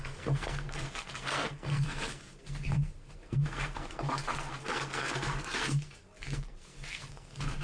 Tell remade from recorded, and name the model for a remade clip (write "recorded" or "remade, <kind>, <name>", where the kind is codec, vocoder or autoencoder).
remade, codec, SNAC